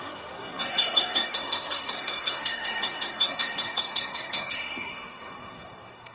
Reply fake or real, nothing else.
fake